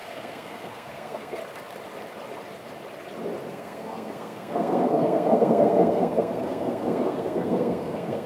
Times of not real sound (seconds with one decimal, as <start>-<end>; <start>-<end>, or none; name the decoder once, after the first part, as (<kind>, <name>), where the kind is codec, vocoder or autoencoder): 0.0-1.4 (codec, SNAC); 3.5-8.3